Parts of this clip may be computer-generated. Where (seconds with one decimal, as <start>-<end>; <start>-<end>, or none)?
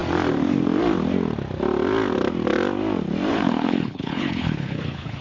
3.3-5.2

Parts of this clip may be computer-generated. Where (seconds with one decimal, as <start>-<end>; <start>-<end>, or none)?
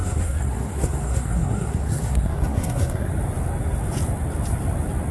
0.0-3.1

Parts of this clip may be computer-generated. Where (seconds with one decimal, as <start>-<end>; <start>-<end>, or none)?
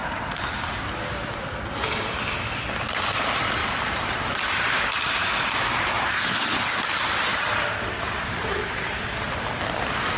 0.0-1.9; 3.6-6.6; 7.3-9.0